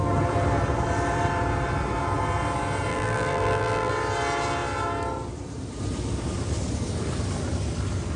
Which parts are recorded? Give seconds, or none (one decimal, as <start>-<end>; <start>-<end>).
0.0-2.9; 3.9-8.2